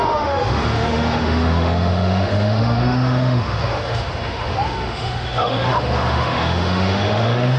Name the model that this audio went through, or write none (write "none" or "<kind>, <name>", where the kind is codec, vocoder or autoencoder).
autoencoder, DAC-VAE